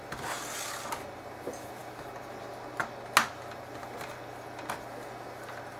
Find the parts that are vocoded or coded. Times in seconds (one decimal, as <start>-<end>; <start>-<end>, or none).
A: none

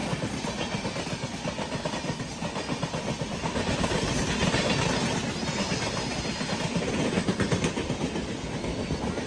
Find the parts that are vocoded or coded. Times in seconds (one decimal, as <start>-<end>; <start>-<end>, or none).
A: 0.0-4.4; 5.1-9.3

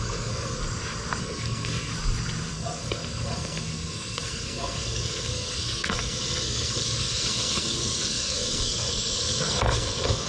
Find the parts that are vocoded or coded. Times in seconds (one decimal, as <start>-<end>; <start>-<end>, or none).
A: 0.0-0.6; 1.2-1.9; 2.5-10.3

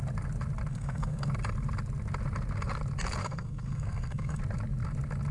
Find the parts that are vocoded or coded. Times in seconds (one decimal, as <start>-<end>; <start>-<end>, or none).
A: 0.7-1.3; 3.2-4.4

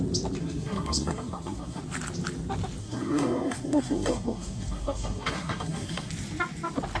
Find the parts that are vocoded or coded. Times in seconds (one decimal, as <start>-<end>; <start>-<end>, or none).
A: 0.4-1.8; 2.8-6.1

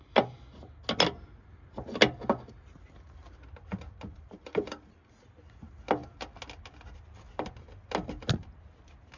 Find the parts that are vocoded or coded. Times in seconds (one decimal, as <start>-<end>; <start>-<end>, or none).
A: 4.1-5.1